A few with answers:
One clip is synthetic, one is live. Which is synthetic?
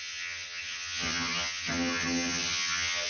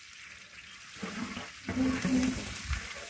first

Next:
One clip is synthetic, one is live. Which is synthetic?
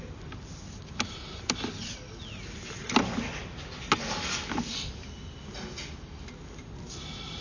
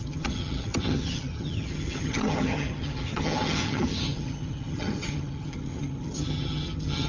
second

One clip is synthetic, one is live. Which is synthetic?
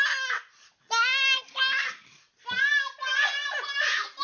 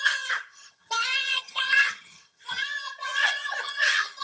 second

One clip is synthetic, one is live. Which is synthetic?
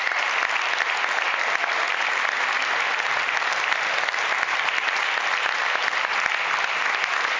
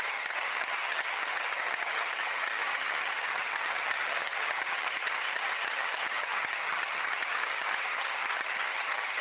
second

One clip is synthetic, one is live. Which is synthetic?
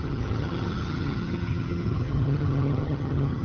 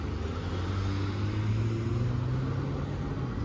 first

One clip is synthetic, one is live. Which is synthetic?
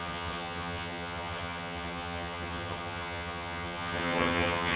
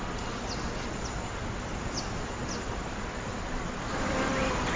first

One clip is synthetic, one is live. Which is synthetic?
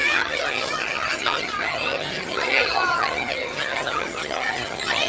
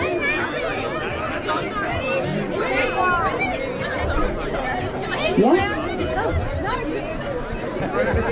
first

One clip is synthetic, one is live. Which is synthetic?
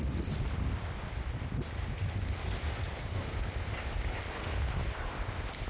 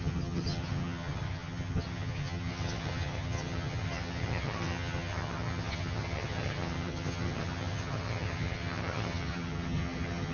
second